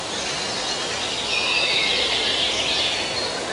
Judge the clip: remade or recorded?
recorded